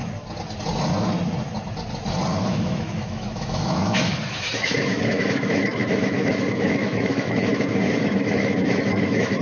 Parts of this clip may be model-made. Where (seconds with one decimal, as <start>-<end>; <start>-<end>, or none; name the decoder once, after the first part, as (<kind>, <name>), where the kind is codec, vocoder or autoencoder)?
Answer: 2.4-9.4 (autoencoder, DAC-VAE)